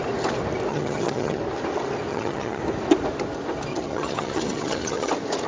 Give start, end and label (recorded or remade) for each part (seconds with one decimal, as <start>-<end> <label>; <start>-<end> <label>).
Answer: 0.0-0.7 recorded; 0.7-1.4 remade; 1.4-2.1 recorded; 2.1-2.6 remade; 2.6-3.7 recorded; 3.7-5.1 remade; 5.1-5.5 recorded

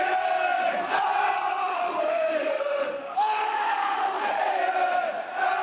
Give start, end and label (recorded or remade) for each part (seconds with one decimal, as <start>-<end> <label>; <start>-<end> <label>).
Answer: 0.0-1.6 recorded; 1.6-4.4 remade; 4.4-5.6 recorded

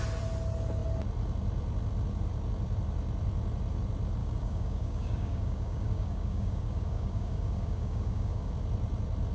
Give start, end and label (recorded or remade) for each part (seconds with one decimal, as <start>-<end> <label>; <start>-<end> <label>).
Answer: 0.0-4.2 recorded; 4.2-8.5 remade; 8.5-9.3 recorded

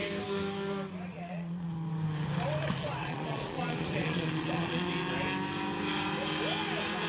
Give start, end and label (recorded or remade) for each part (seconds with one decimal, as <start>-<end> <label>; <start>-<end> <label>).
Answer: 0.0-1.1 recorded; 1.1-1.7 remade; 1.7-3.0 recorded; 3.0-4.9 remade; 4.9-7.1 recorded

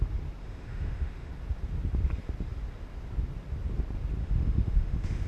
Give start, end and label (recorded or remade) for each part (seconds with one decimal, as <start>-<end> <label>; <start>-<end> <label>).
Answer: 0.0-0.4 recorded; 0.4-1.3 remade; 1.3-4.2 recorded; 4.2-5.3 remade

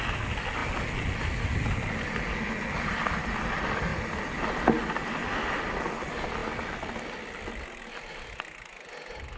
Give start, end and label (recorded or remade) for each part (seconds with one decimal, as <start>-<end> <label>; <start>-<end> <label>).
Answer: 0.0-9.4 recorded